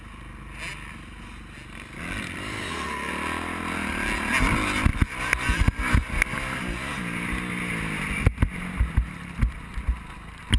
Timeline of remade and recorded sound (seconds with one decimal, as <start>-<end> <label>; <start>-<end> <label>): 0.0-4.9 recorded; 4.9-7.0 remade; 7.0-10.6 recorded

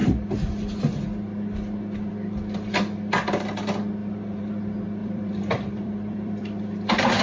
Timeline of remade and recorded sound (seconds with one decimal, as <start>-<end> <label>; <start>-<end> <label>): 0.0-4.0 recorded; 4.0-4.6 remade; 4.6-5.0 recorded; 5.0-7.2 remade

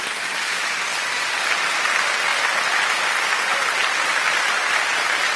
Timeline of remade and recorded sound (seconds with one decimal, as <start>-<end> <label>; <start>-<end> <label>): 0.0-0.9 recorded; 0.9-1.4 remade; 1.4-5.4 recorded

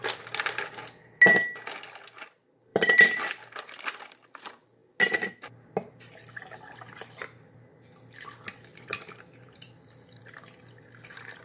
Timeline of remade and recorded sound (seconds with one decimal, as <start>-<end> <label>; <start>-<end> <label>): 0.0-2.7 recorded; 2.7-4.1 remade; 4.1-8.7 recorded; 8.7-10.2 remade; 10.2-11.4 recorded

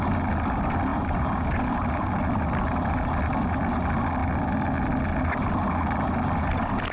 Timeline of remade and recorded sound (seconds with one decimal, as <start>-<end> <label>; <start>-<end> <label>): 0.0-0.9 recorded; 0.9-2.1 remade; 2.1-6.9 recorded

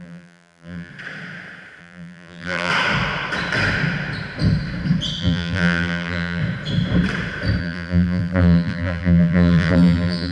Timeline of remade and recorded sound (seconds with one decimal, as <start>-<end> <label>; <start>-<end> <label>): 0.0-0.9 remade; 0.9-1.8 recorded; 1.8-2.7 remade; 2.7-5.2 recorded; 5.2-6.4 remade; 6.4-7.6 recorded; 7.6-10.3 remade

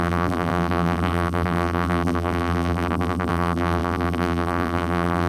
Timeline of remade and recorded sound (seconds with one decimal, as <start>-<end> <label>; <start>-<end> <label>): 0.0-5.3 remade